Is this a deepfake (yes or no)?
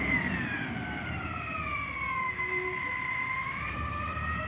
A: yes